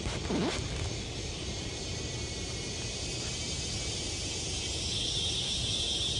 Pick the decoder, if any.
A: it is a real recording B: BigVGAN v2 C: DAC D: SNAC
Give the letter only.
A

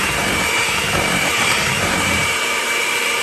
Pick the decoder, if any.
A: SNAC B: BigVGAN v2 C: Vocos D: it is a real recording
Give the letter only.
B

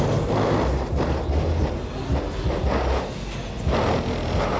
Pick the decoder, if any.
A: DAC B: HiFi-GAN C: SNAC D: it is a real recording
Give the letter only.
D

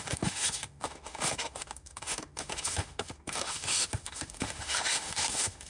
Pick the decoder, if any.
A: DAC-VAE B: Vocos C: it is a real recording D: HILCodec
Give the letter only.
A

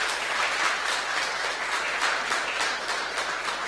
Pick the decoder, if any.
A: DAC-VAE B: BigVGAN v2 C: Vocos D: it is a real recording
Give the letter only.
D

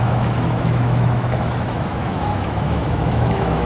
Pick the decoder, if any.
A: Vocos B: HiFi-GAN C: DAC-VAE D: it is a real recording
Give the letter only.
C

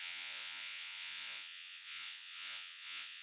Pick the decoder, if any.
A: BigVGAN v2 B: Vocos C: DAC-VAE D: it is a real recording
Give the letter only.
B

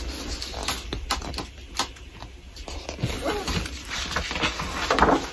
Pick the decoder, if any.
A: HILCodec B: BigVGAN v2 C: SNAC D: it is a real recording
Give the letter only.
D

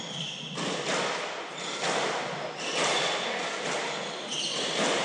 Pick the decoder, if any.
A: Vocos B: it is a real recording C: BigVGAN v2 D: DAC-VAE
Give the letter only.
B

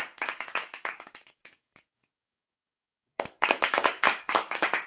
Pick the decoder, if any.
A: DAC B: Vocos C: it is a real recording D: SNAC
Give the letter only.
A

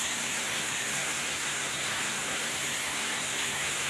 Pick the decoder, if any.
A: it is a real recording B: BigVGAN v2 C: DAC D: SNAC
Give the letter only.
D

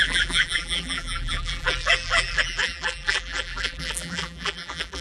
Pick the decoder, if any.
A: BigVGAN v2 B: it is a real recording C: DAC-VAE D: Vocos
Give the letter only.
A